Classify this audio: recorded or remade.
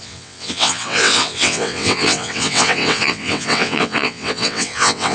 remade